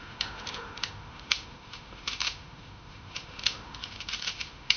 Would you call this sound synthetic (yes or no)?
yes